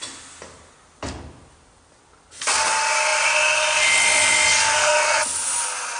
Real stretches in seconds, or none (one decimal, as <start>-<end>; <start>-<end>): 0.0-4.7; 5.2-6.0